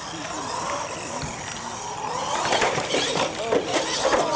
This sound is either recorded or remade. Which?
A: recorded